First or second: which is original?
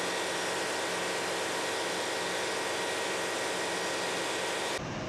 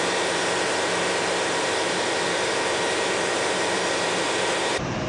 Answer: first